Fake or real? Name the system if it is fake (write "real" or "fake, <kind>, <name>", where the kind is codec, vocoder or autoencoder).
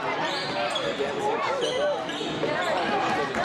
real